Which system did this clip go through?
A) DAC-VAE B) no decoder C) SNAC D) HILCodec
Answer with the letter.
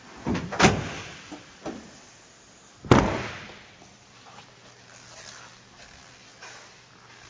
B